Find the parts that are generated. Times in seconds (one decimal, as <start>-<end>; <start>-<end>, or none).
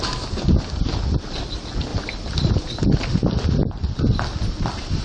none